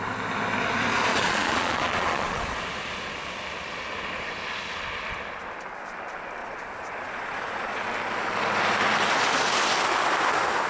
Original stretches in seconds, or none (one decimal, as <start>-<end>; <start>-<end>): 0.0-1.1; 2.6-6.4; 7.8-10.7